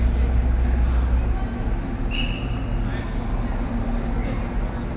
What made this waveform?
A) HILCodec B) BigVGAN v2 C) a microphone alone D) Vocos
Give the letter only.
C